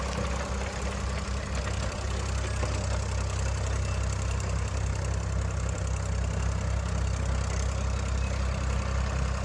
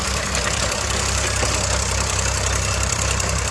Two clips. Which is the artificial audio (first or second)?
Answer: second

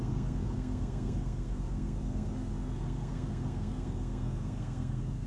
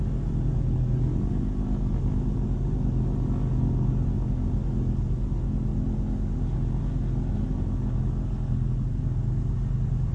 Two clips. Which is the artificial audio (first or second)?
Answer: first